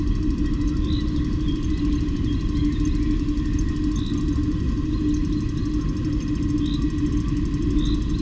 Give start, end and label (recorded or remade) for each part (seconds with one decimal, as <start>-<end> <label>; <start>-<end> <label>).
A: 0.0-8.2 recorded